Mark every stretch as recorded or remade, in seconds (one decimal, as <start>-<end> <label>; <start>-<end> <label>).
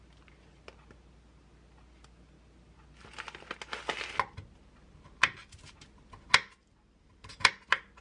0.0-6.6 recorded; 6.6-7.5 remade; 7.5-8.0 recorded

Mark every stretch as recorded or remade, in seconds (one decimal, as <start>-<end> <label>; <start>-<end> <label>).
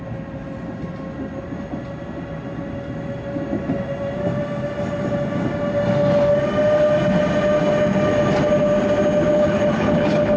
0.0-9.3 recorded; 9.3-10.4 remade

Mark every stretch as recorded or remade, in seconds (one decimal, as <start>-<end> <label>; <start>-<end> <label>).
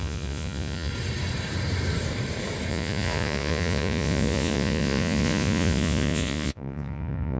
0.0-0.9 remade; 0.9-2.7 recorded; 2.7-7.4 remade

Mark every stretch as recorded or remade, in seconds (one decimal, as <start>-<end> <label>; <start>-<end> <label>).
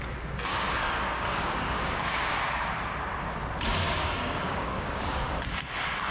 0.0-0.5 recorded; 0.5-2.3 remade; 2.3-3.8 recorded; 3.8-5.4 remade; 5.4-6.1 recorded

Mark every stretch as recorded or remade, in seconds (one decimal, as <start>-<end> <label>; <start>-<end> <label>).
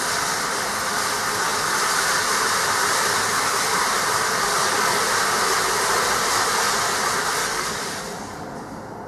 0.0-4.3 recorded; 4.3-5.0 remade; 5.0-7.4 recorded; 7.4-8.0 remade; 8.0-9.1 recorded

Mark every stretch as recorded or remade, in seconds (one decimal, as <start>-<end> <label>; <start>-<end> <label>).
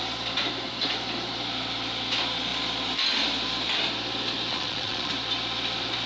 0.0-4.5 recorded; 4.5-5.1 remade; 5.1-6.1 recorded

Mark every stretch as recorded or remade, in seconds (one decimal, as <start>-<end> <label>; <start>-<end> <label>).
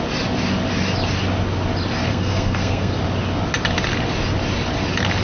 0.0-2.1 recorded; 2.1-3.0 remade; 3.0-5.2 recorded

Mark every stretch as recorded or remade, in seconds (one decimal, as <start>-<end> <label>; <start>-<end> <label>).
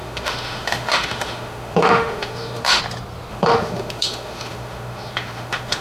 0.0-2.8 remade; 2.8-3.3 recorded; 3.3-5.8 remade